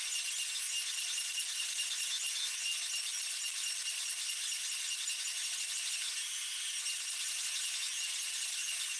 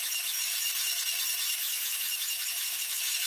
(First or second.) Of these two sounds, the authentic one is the first